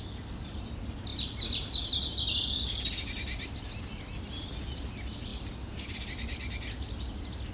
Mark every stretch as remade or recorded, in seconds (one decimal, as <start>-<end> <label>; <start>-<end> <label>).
0.0-1.1 recorded; 1.1-1.7 remade; 1.7-7.5 recorded